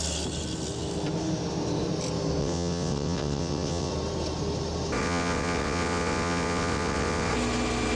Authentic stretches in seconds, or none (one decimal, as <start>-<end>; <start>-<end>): 0.0-2.4; 3.9-5.0; 7.3-7.9